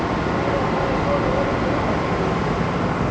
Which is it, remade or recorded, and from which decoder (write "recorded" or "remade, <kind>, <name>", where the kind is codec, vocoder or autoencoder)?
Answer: recorded